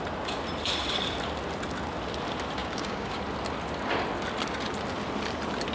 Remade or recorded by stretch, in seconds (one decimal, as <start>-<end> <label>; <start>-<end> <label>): 0.0-2.6 recorded; 2.6-3.2 remade; 3.2-5.7 recorded